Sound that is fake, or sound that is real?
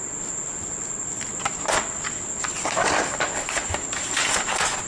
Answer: real